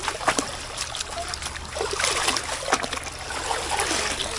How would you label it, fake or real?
real